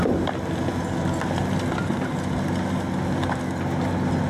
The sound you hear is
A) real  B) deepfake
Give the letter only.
A